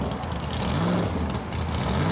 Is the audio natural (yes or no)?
yes